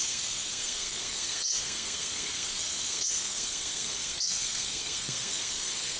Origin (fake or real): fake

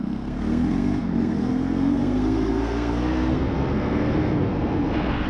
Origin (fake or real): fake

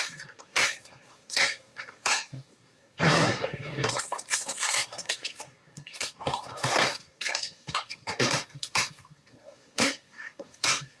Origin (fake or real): fake